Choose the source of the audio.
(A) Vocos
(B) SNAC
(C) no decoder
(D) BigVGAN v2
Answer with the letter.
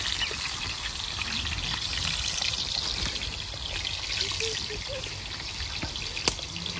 C